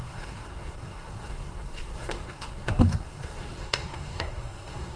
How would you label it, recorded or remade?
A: remade